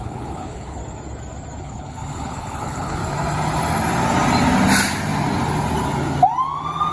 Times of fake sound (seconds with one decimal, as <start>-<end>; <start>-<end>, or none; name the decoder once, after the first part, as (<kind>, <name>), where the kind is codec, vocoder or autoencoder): 0.0-0.8 (codec, HILCodec); 1.6-3.0